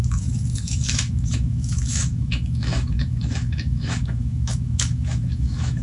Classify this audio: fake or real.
fake